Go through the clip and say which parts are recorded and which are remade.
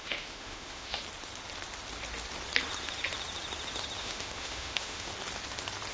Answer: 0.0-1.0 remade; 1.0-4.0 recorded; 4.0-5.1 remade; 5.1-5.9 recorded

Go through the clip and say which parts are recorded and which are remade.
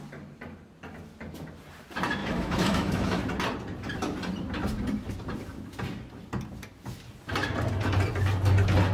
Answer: 0.0-2.2 recorded; 2.2-3.2 remade; 3.2-8.9 recorded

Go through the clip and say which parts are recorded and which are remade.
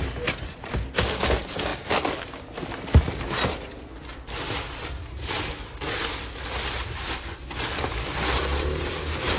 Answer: 0.0-9.4 recorded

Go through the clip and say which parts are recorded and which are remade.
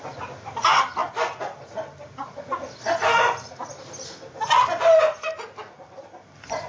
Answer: 0.0-6.7 recorded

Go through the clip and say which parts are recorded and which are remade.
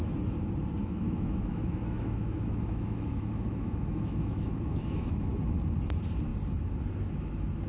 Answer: 0.0-0.8 recorded; 0.8-5.3 remade; 5.3-7.7 recorded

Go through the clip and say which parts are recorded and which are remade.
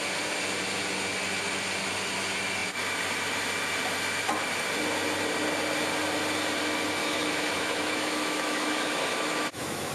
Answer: 0.0-7.0 recorded; 7.0-9.9 remade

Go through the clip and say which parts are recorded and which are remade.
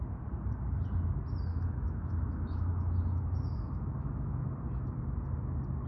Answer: 0.0-1.5 recorded; 1.5-4.4 remade; 4.4-5.9 recorded